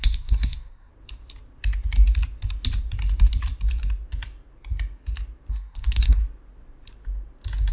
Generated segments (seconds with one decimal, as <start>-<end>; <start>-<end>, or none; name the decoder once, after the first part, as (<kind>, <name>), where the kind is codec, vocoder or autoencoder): 0.0-0.9 (codec, SNAC); 5.5-6.2